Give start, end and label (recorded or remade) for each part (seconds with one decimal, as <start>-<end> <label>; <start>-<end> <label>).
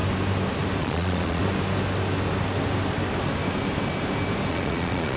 0.0-0.8 recorded; 0.8-1.4 remade; 1.4-4.5 recorded; 4.5-5.2 remade